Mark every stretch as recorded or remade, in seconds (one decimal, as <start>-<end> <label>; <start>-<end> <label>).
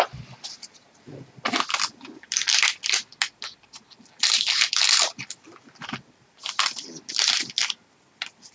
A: 0.0-8.5 recorded